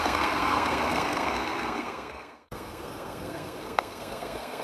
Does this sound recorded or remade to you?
remade